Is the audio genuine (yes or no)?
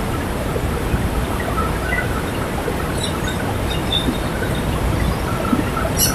no